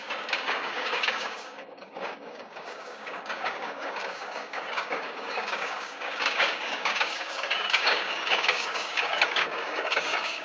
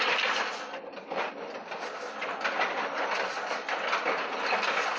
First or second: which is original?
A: second